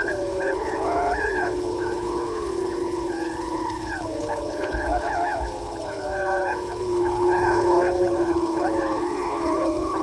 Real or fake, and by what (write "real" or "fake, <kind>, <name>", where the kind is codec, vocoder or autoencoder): fake, codec, HILCodec